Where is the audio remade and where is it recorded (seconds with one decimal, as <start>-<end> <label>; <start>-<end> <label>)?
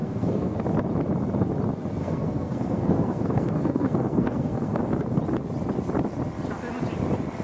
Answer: 0.0-0.6 remade; 0.6-2.0 recorded; 2.0-4.8 remade; 4.8-7.4 recorded